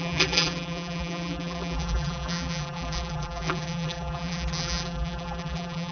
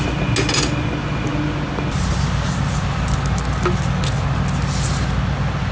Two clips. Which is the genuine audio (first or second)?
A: second